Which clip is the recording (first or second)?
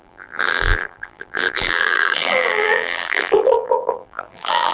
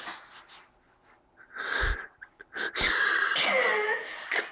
second